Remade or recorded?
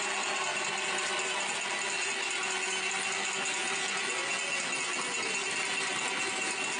recorded